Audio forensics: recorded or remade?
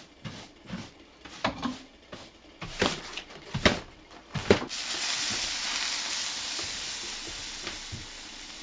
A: recorded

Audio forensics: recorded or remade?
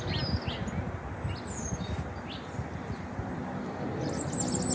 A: recorded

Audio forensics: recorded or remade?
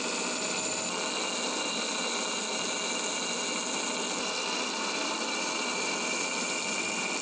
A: recorded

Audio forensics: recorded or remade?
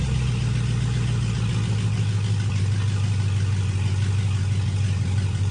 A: recorded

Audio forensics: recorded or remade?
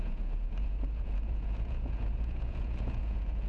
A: remade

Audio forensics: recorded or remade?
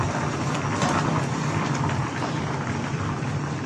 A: remade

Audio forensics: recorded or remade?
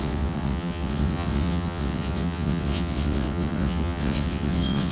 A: remade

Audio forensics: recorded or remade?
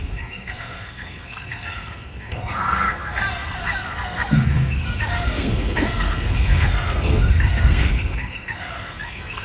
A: remade